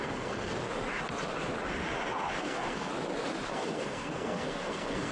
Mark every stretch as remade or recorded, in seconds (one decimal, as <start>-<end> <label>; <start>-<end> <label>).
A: 0.0-0.5 remade; 0.5-2.4 recorded; 2.4-2.9 remade; 2.9-3.5 recorded; 3.5-5.1 remade